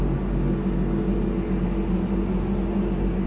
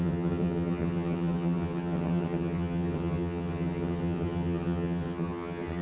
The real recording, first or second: first